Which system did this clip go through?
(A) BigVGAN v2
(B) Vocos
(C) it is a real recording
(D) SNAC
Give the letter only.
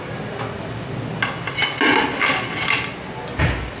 C